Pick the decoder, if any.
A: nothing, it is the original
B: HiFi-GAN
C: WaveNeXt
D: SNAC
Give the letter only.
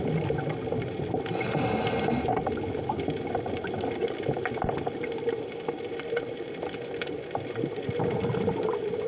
A